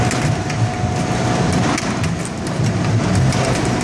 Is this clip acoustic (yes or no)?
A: yes